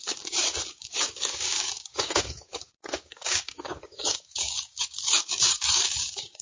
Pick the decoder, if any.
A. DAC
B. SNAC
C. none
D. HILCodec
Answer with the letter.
A